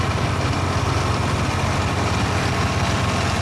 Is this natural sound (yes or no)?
yes